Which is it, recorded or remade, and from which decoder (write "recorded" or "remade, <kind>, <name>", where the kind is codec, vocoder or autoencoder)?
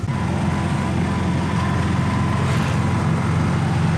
recorded